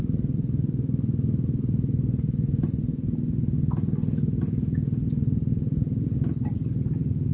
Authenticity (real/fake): real